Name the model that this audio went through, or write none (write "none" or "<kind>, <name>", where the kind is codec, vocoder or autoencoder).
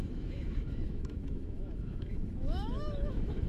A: autoencoder, DAC-VAE